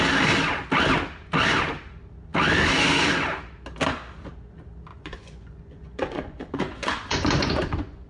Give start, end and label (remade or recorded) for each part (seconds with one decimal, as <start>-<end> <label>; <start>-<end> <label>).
0.0-4.9 recorded; 4.9-8.1 remade